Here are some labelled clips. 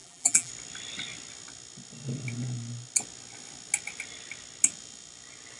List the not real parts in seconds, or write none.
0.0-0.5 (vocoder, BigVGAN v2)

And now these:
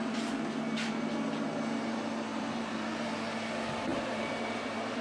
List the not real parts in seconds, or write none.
2.3-3.1 (vocoder, BigVGAN v2); 3.9-5.0

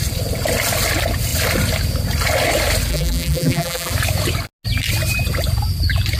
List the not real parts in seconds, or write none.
2.9-3.9 (vocoder, BigVGAN v2)

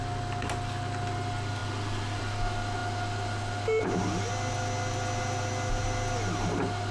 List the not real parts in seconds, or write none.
1.6-2.2 (vocoder, BigVGAN v2)